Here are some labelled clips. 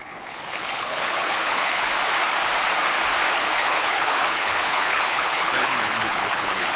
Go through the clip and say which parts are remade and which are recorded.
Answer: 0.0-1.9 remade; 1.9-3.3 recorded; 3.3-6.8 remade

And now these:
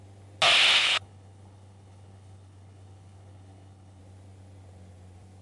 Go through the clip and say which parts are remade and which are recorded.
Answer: 0.0-0.8 recorded; 0.8-4.0 remade; 4.0-5.4 recorded

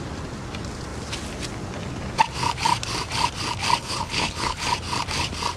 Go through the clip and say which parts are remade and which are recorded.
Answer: 0.0-3.8 recorded; 3.8-4.6 remade; 4.6-5.6 recorded

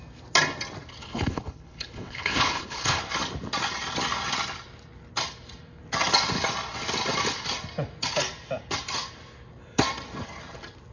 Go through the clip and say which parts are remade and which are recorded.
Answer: 0.0-1.0 recorded; 1.0-3.0 remade; 3.0-10.9 recorded

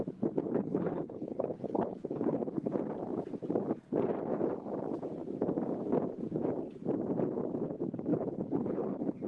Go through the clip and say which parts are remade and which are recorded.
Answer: 0.0-0.4 recorded; 0.4-2.7 remade; 2.7-8.1 recorded; 8.1-9.3 remade

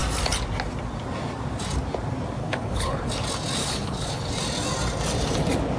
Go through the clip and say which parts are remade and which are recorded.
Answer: 0.0-2.4 recorded; 2.4-3.1 remade; 3.1-3.6 recorded; 3.6-4.3 remade; 4.3-5.8 recorded

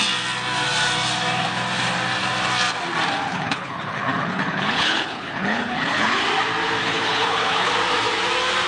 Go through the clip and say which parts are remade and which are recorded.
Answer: 0.0-3.3 recorded; 3.3-6.2 remade; 6.2-6.8 recorded; 6.8-7.7 remade; 7.7-8.7 recorded

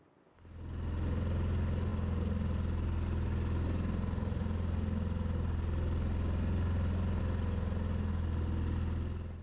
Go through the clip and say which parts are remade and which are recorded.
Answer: 0.0-9.4 recorded